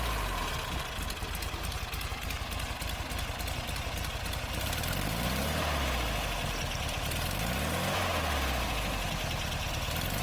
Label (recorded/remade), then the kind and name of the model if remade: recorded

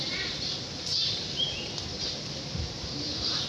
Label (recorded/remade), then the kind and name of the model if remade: remade, vocoder, BigVGAN v2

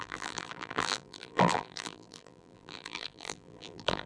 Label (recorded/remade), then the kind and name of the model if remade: remade, vocoder, BigVGAN v2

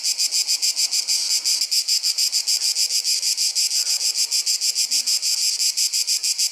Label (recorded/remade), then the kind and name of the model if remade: recorded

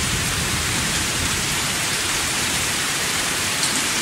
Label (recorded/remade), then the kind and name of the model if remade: remade, vocoder, BigVGAN v2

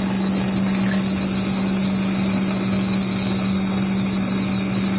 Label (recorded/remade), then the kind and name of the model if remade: recorded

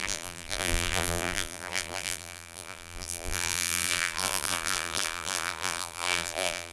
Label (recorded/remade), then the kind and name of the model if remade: remade, vocoder, BigVGAN v2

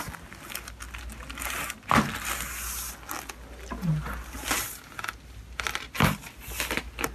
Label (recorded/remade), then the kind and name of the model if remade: recorded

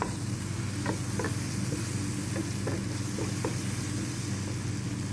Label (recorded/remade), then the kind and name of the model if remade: recorded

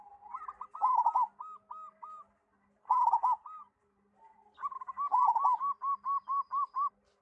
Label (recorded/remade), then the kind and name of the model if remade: recorded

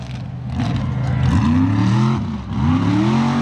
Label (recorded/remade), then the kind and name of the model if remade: recorded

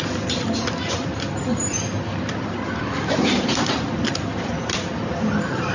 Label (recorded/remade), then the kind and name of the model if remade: remade, vocoder, BigVGAN v2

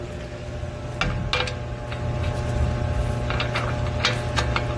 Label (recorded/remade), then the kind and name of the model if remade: recorded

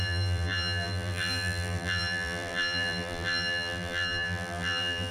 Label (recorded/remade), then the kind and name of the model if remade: remade, vocoder, BigVGAN v2